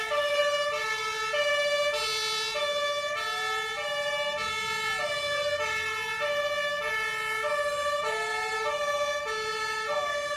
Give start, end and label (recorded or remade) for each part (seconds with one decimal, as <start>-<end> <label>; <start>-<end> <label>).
0.0-10.4 recorded